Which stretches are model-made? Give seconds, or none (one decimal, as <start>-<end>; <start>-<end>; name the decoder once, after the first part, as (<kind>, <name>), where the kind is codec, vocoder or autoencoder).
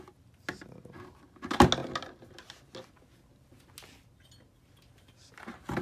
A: none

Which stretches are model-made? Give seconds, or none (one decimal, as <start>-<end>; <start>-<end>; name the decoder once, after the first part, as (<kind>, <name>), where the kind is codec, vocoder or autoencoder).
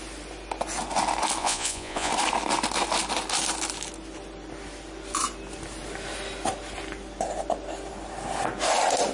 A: 1.4-2.1 (vocoder, Vocos)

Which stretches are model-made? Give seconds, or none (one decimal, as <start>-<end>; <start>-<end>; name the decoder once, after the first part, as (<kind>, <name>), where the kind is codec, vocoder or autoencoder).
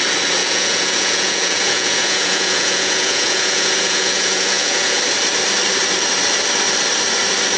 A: 0.4-5.0 (vocoder, Vocos)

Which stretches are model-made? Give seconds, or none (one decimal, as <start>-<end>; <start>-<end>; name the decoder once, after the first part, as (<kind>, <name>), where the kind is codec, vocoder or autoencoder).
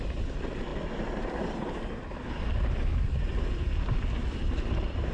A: none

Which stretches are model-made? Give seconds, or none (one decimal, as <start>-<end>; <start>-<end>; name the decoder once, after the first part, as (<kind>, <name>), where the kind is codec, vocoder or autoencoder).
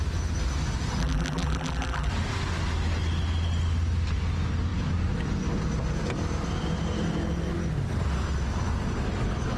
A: 1.0-2.1 (vocoder, BigVGAN v2)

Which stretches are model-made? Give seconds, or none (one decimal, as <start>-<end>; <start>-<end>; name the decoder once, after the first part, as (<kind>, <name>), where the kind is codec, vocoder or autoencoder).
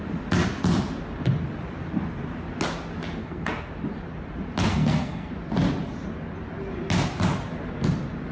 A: 3.2-3.7 (codec, SNAC); 4.7-5.3